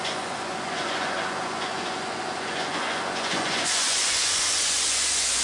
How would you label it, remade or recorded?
remade